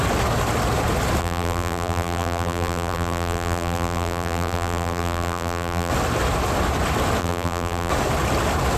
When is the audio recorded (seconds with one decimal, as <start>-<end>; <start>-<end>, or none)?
0.0-1.2; 5.9-7.2; 7.9-8.8

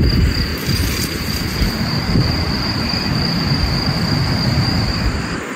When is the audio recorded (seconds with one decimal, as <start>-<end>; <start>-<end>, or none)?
0.0-0.5; 3.7-4.2

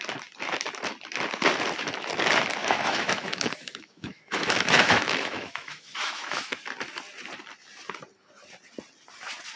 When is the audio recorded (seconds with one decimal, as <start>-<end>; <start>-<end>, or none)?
0.0-2.6; 6.6-9.6

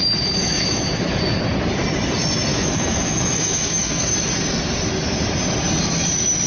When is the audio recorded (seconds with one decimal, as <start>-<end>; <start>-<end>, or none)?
0.0-0.4; 1.2-2.5; 4.1-6.5

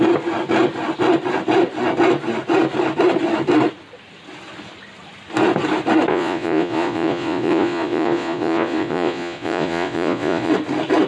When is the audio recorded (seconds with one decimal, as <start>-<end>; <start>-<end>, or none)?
0.0-6.1; 10.5-11.1

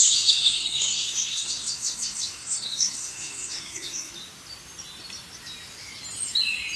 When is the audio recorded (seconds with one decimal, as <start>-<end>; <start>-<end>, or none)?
4.1-6.8

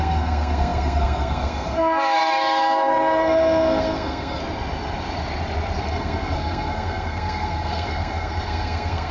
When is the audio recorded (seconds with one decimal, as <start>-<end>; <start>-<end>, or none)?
4.4-5.8